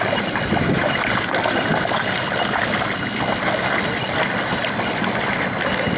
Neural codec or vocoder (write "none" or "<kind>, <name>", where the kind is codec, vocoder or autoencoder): none